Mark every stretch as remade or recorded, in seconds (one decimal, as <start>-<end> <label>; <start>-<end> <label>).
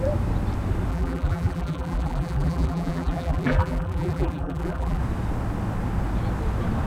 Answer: 0.0-0.9 recorded; 0.9-5.0 remade; 5.0-6.9 recorded